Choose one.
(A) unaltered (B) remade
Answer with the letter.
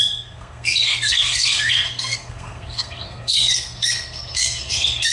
B